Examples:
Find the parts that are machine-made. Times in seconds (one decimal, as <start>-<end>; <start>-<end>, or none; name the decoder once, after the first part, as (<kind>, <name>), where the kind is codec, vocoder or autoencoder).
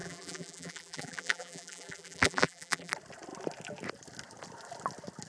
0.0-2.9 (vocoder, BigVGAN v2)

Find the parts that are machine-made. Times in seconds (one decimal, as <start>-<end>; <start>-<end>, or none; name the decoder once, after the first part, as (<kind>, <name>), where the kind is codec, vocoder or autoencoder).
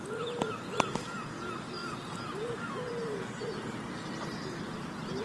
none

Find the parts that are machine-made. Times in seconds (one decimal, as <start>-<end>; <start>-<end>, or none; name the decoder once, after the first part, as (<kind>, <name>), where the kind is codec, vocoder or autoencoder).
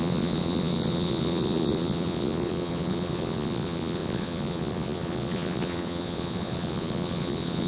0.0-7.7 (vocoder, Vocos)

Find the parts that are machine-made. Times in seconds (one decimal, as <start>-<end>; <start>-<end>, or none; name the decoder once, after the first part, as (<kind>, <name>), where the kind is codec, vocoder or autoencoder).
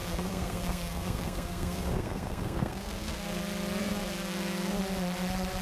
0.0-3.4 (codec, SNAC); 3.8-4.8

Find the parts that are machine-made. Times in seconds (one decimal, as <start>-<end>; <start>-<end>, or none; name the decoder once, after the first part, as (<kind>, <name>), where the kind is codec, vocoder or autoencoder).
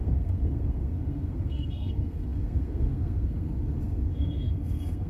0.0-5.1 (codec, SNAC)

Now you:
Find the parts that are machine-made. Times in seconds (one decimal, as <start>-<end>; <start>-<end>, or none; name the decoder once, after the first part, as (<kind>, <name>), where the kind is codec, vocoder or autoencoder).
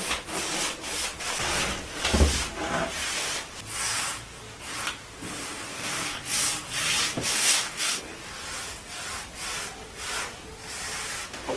5.7-6.2 (codec, DAC); 7.3-8.0